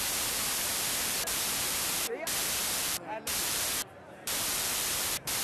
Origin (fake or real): fake